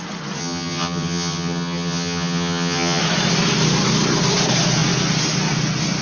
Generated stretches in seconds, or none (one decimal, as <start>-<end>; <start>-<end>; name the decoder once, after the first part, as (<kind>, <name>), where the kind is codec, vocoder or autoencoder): 0.4-3.0 (vocoder, HiFi-GAN)